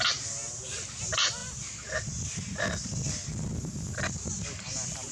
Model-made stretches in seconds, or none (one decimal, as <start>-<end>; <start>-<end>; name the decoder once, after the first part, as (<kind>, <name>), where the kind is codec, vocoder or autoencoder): none